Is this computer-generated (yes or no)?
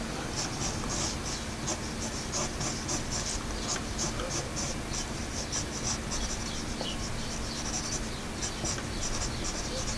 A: no